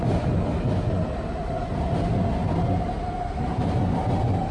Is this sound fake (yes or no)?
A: no